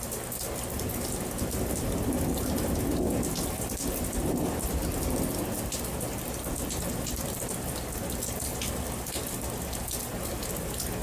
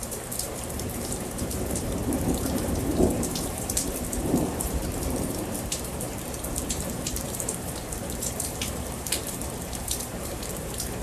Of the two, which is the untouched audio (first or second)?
first